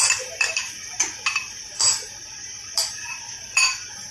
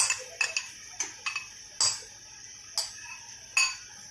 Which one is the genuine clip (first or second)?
second